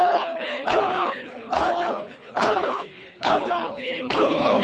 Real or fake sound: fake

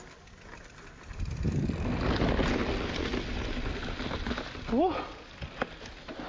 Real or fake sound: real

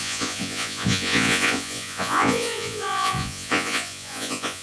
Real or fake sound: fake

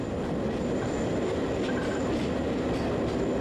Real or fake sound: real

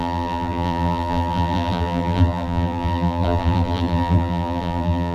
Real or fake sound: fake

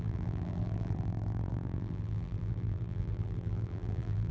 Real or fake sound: fake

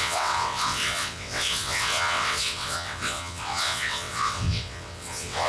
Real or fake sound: fake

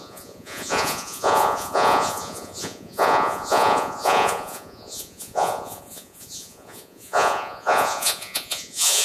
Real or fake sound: fake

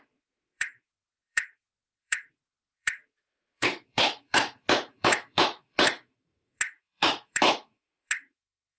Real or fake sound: fake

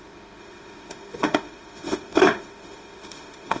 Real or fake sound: fake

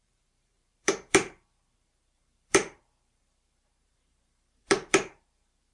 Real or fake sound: fake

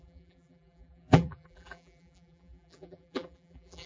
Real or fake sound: fake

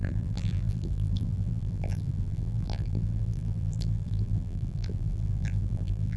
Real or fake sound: fake